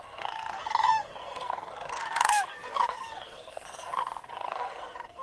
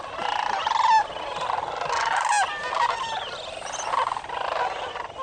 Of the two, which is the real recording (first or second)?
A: second